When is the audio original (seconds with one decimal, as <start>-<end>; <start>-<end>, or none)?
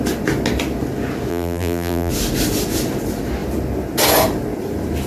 0.0-1.3; 2.1-5.1